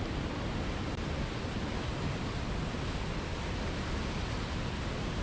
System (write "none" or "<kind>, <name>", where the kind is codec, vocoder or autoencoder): none